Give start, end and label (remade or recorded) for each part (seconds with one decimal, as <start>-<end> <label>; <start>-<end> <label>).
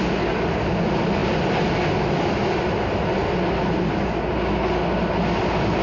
0.0-5.8 recorded